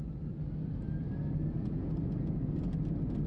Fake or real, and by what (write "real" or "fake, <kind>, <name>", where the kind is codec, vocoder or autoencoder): real